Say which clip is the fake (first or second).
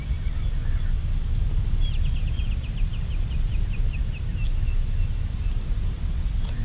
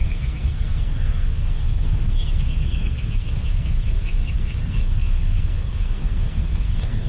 second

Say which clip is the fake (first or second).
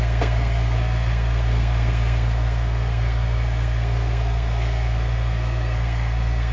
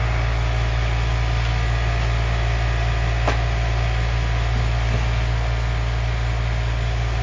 first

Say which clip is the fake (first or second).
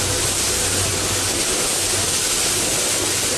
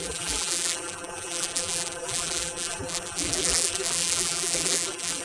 second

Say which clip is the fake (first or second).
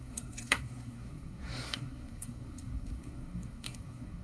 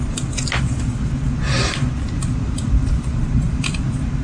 first